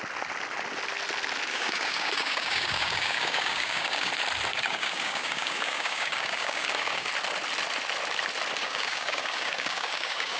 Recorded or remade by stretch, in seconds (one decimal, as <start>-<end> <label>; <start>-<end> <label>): 0.0-1.5 recorded; 1.5-4.1 remade; 4.1-4.5 recorded; 4.5-7.1 remade; 7.1-8.6 recorded; 8.6-10.4 remade